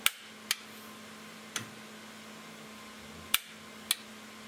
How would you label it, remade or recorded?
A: recorded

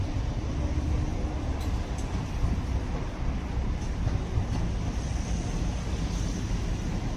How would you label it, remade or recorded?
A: recorded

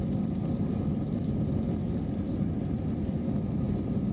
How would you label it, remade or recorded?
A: remade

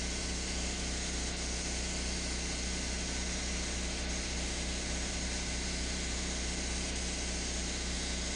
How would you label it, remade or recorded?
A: recorded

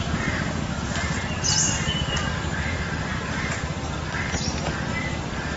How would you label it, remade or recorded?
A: remade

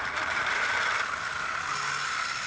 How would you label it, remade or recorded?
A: remade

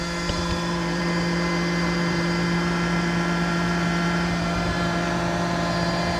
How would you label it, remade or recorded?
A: remade